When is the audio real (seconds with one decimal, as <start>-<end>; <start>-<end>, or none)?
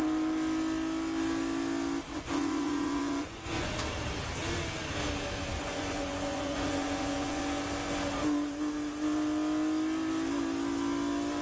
0.0-2.1; 3.7-5.5; 7.4-11.4